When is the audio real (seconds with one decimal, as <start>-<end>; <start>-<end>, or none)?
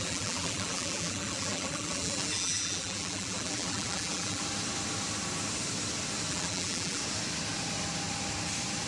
4.4-6.3; 7.0-8.9